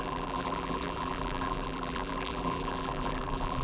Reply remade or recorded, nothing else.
remade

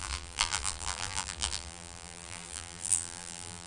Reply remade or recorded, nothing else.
remade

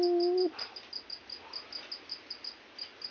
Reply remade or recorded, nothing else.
recorded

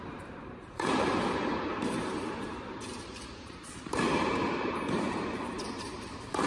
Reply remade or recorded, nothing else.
remade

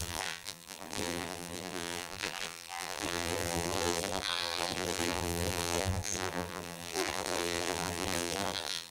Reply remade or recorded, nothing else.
remade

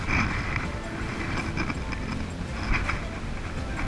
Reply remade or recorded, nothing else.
recorded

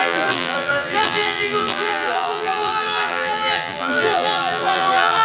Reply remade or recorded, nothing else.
remade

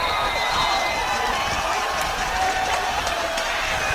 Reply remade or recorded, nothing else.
remade